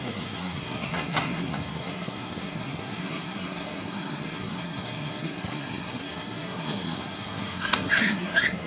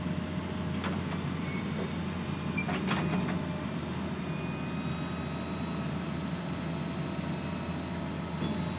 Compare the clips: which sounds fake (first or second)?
first